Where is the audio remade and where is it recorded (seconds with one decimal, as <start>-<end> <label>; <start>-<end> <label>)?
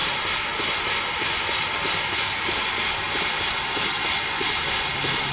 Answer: 0.0-5.3 recorded